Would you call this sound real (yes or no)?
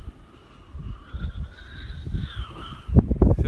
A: yes